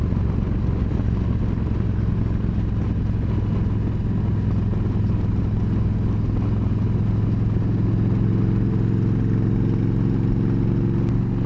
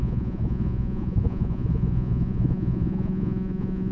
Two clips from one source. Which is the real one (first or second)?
first